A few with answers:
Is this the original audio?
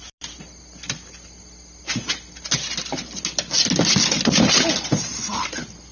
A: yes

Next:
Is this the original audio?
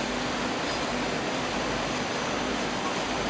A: no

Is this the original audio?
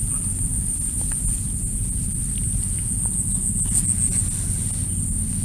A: yes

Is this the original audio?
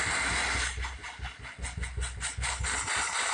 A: yes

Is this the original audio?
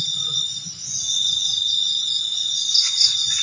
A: yes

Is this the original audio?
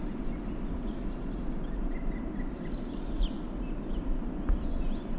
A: yes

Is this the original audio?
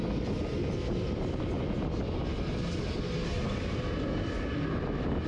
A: yes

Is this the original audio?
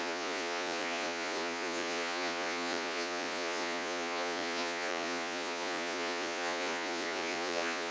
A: no